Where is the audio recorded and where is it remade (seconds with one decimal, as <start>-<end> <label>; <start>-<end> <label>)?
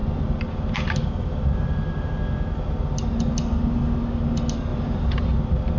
0.0-2.1 remade; 2.1-4.7 recorded; 4.7-5.3 remade; 5.3-5.8 recorded